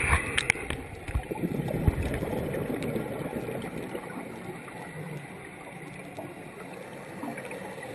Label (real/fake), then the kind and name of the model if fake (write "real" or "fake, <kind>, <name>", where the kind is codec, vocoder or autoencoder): real